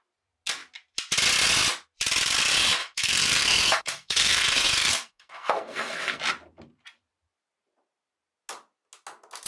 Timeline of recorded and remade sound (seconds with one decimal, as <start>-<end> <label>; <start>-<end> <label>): 0.0-2.8 recorded; 2.8-6.2 remade; 6.2-9.5 recorded